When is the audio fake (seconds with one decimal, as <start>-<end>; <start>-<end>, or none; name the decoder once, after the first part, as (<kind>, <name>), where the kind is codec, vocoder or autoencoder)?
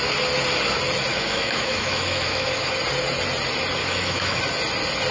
1.1-2.7 (autoencoder, DAC-VAE); 3.8-4.4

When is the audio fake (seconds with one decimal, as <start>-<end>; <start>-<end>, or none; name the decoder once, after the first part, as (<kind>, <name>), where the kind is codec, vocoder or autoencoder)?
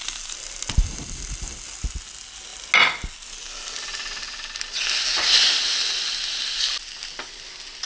none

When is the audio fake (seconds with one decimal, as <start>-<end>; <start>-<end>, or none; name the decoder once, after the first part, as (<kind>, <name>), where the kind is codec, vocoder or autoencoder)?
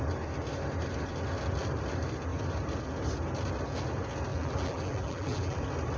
4.3-5.6 (vocoder, BigVGAN v2)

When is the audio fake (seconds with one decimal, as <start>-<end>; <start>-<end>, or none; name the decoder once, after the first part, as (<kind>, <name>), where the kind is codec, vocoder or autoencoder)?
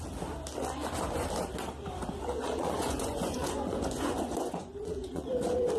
2.4-5.3 (vocoder, Vocos)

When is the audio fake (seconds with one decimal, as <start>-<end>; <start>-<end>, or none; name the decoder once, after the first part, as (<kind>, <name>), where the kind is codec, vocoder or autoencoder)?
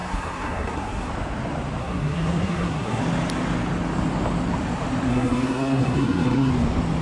0.0-1.1 (codec, SNAC); 1.8-3.0; 5.1-6.5